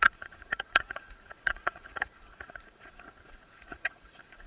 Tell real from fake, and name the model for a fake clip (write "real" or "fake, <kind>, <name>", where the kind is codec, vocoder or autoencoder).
fake, vocoder, Vocos